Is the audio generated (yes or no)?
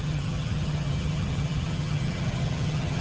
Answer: yes